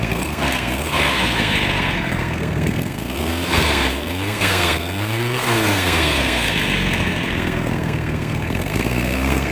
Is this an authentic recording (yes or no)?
no